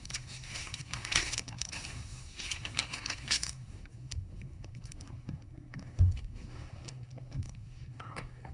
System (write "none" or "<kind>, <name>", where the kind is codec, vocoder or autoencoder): codec, SNAC